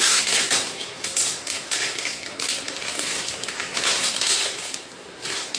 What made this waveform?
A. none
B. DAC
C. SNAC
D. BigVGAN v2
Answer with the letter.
C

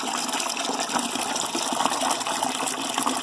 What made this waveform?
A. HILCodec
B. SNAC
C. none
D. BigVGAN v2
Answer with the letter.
C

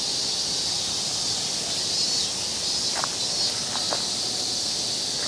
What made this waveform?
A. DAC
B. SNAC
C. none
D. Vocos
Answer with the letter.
C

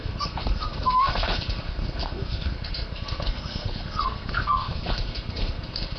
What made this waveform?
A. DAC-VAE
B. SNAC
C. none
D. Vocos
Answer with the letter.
B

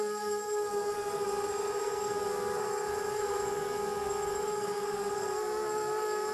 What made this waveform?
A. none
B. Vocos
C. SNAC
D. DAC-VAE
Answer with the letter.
C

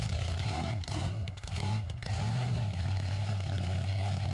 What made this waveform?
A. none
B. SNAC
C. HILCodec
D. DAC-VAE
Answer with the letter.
B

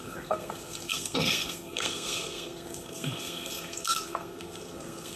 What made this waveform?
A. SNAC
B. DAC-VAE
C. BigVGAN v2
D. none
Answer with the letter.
A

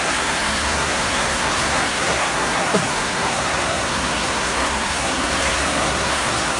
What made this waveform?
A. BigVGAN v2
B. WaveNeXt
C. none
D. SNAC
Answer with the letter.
D